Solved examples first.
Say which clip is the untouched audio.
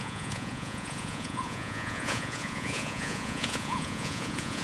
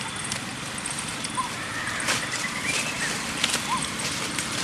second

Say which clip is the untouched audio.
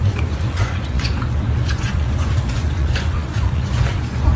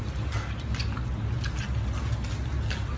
second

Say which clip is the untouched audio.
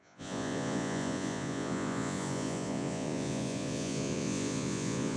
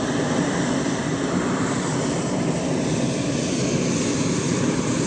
second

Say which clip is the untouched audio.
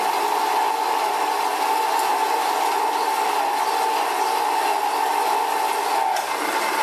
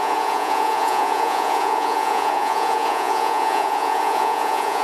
first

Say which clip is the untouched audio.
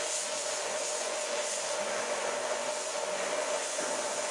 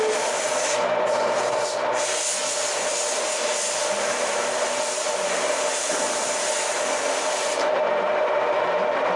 second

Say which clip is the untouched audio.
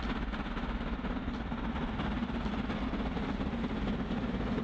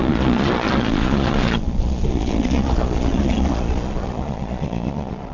first